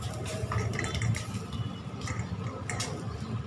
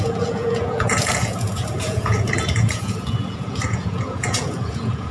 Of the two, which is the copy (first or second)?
second